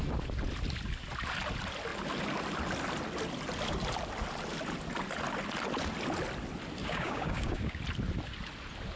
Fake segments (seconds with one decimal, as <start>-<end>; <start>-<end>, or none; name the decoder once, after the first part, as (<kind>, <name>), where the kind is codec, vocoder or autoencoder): 6.8-7.8 (codec, DAC)